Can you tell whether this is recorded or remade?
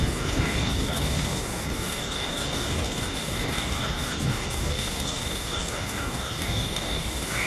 remade